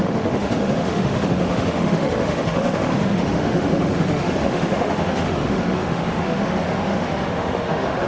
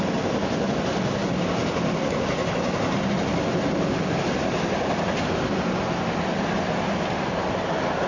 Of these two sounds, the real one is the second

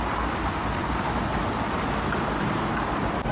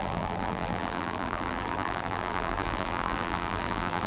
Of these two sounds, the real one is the first